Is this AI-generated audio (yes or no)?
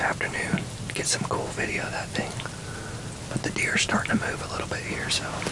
no